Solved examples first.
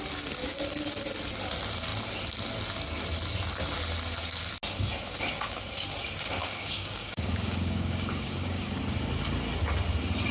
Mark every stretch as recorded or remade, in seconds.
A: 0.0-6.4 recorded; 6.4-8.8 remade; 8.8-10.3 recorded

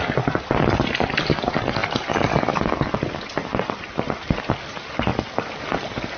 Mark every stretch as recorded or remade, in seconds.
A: 0.0-6.2 recorded